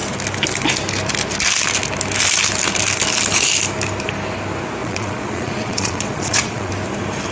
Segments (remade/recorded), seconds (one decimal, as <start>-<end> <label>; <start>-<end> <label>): 0.0-4.8 recorded; 4.8-6.7 remade; 6.7-7.3 recorded